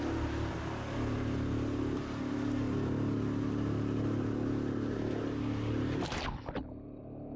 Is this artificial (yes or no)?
no